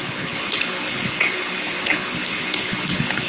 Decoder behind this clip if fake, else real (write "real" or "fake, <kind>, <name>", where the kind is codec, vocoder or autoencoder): fake, codec, HILCodec